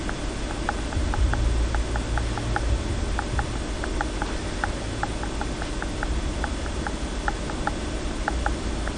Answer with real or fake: real